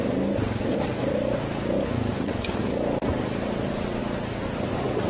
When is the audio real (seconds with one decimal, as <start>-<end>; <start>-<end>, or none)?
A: 0.0-4.0